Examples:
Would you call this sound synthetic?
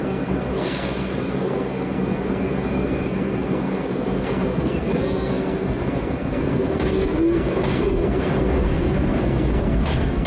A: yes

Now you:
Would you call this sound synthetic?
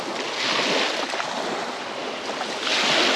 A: no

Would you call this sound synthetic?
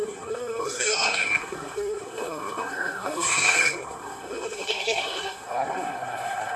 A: yes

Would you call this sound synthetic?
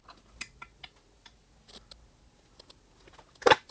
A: no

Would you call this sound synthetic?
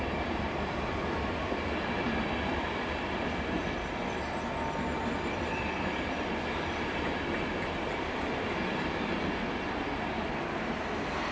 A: yes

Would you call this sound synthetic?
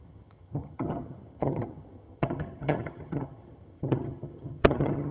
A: yes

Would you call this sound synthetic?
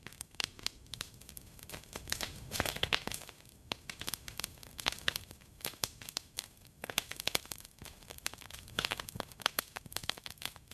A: yes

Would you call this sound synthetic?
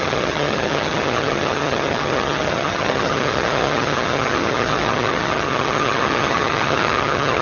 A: yes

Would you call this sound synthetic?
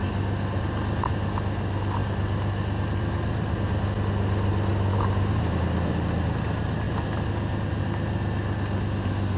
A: no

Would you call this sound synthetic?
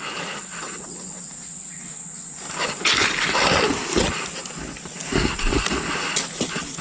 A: no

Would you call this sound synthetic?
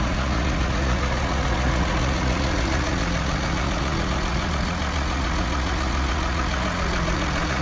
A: yes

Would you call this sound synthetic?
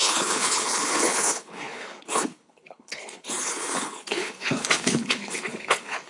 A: yes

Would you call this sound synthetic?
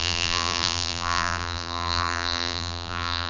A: yes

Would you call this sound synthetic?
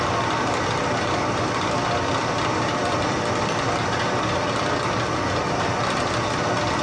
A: no